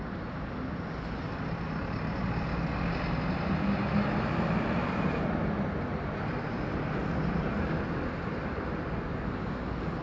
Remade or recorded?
recorded